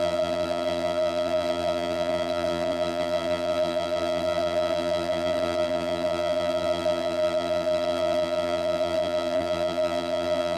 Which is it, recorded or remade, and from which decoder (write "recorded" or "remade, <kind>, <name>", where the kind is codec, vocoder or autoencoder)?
remade, vocoder, BigVGAN v2